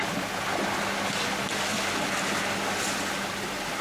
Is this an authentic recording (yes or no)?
yes